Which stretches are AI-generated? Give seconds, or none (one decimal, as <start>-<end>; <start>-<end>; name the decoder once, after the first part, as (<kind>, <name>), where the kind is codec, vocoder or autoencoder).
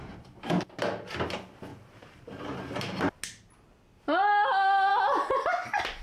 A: 1.7-3.2 (vocoder, BigVGAN v2); 4.9-5.4